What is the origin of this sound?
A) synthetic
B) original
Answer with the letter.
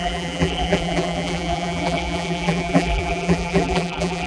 A